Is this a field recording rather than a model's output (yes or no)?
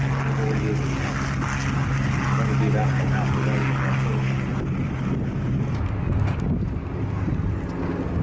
yes